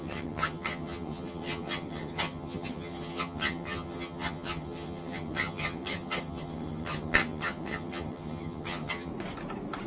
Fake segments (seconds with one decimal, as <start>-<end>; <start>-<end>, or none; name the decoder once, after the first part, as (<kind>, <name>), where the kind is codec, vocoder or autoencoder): 0.0-9.1 (vocoder, HiFi-GAN)